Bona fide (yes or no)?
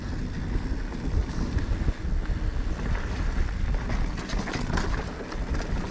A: yes